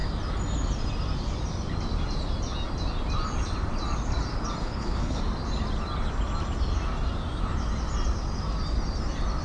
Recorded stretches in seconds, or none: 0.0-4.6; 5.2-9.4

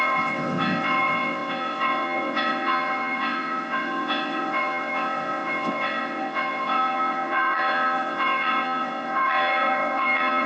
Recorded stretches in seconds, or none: none